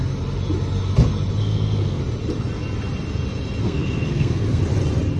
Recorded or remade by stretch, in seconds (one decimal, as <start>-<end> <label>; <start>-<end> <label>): 0.0-1.4 recorded; 1.4-2.0 remade; 2.0-3.6 recorded; 3.6-4.6 remade; 4.6-5.2 recorded